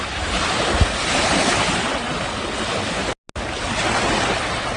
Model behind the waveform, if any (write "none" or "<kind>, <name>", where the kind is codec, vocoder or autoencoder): none